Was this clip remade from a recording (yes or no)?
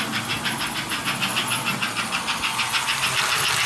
no